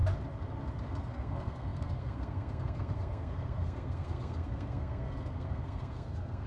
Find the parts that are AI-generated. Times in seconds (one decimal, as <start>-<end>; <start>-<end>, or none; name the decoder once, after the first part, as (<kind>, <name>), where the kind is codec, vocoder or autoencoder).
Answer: 0.8-6.5 (codec, SNAC)

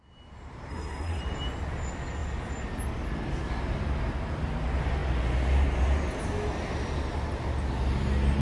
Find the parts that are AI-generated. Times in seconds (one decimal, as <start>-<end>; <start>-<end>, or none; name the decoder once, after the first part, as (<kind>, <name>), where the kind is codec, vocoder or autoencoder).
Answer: 0.7-1.2 (codec, SNAC)

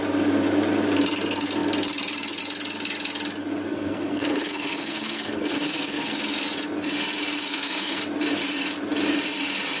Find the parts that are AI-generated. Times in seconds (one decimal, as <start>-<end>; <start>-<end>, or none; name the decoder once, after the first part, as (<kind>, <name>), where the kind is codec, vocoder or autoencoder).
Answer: 3.7-6.2 (codec, SNAC); 7.5-8.0

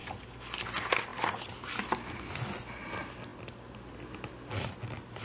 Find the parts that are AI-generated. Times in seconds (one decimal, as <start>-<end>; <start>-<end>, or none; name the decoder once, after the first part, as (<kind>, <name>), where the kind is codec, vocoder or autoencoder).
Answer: none

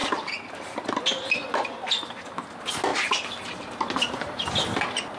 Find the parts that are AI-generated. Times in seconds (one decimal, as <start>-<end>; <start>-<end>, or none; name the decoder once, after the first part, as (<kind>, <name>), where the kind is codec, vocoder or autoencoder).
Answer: none